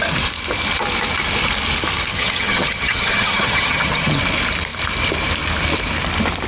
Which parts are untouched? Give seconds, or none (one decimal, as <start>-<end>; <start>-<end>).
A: 0.0-2.1; 4.2-6.5